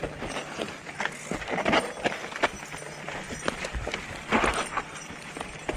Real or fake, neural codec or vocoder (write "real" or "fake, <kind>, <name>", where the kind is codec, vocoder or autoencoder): real